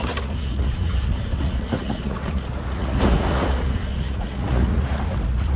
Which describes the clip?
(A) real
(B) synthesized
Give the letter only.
B